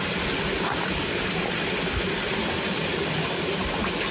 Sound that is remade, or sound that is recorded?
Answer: recorded